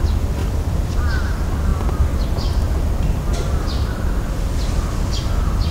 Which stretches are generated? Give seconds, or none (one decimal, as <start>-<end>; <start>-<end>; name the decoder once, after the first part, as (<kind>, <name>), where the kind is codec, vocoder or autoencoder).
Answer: 0.4-1.2 (vocoder, BigVGAN v2)